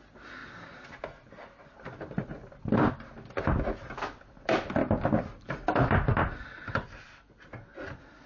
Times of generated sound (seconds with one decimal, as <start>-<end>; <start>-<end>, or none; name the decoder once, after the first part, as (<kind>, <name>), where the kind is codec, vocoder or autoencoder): none